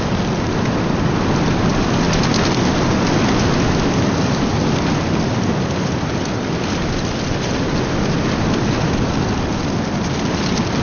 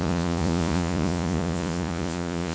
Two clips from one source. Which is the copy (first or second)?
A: second